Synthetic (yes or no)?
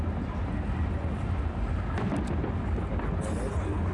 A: no